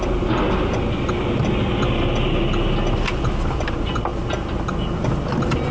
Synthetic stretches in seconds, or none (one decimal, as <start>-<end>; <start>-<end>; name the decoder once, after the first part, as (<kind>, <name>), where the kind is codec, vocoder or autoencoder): none